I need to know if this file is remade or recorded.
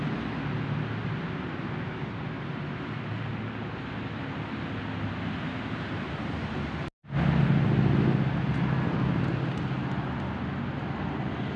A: recorded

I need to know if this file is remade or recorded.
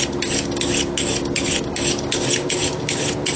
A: recorded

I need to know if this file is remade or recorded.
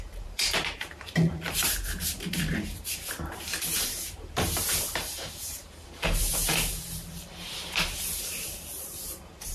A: remade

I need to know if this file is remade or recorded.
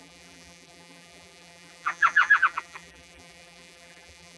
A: remade